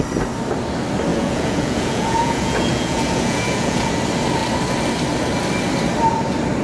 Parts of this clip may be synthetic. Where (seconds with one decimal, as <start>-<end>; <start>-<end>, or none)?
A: 1.1-3.9